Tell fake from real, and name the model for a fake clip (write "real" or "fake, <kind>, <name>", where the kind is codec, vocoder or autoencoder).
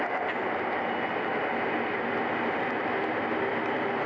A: real